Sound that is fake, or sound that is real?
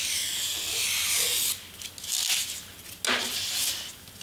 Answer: real